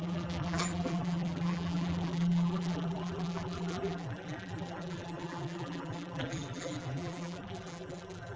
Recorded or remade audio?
remade